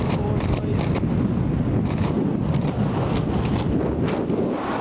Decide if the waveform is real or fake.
real